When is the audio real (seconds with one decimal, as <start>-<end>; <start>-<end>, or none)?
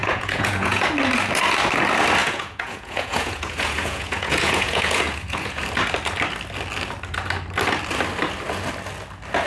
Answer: 0.8-2.2; 5.6-9.5